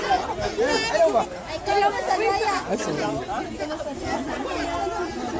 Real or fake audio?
real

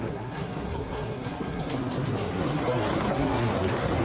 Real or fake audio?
fake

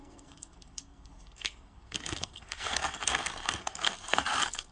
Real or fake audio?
fake